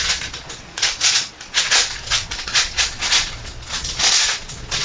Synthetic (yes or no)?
yes